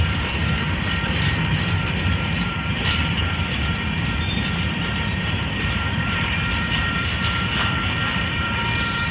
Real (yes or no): no